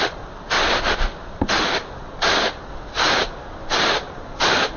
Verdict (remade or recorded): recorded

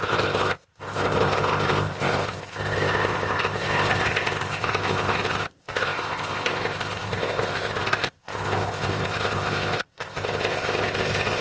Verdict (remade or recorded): remade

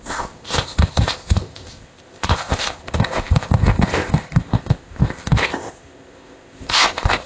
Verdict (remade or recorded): remade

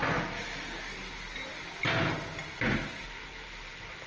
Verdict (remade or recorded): recorded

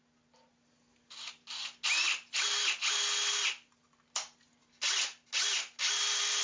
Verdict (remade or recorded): recorded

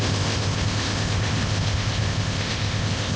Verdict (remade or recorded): remade